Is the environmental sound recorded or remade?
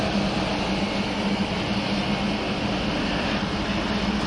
recorded